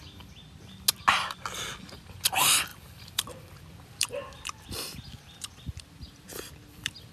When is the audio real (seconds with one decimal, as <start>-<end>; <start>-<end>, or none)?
0.0-2.7